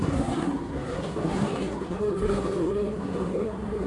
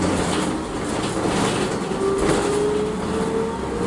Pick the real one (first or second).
second